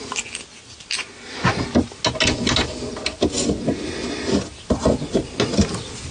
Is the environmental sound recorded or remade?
recorded